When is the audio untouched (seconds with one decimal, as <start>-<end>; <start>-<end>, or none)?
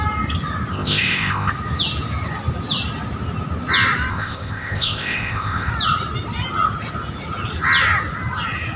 0.0-0.7; 1.5-4.1; 5.7-8.8